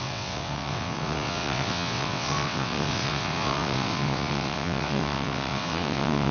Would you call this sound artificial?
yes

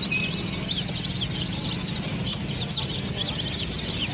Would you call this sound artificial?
no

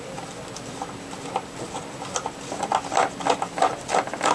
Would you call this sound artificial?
no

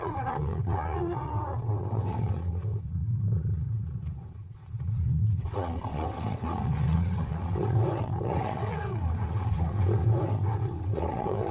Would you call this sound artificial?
yes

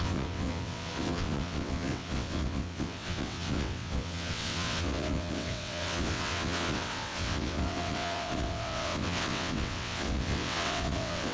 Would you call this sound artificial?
yes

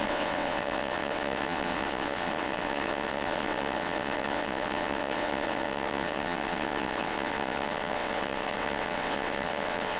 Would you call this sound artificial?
yes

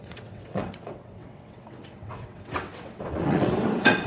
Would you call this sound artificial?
yes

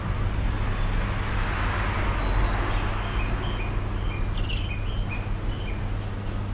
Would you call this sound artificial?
no